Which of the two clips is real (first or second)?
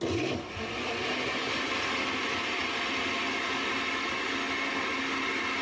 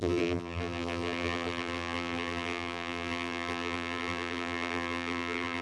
first